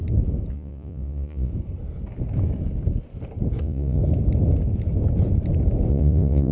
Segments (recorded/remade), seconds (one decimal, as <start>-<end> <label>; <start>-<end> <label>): 0.0-0.5 recorded; 0.5-1.5 remade; 1.5-3.6 recorded; 3.6-4.0 remade; 4.0-5.9 recorded; 5.9-6.5 remade